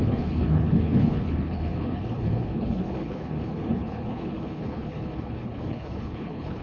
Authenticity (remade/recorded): remade